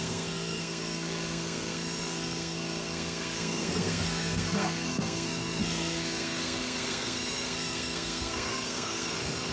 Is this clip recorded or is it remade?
remade